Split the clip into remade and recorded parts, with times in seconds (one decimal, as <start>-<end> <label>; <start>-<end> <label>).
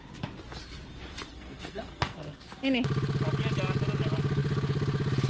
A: 0.0-1.3 recorded; 1.3-2.5 remade; 2.5-5.3 recorded